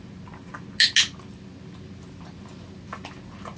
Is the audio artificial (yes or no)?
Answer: no